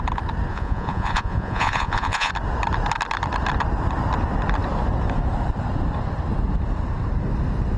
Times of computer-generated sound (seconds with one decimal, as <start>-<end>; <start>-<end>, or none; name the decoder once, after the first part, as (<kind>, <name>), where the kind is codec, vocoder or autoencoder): 0.5-2.3 (vocoder, Vocos)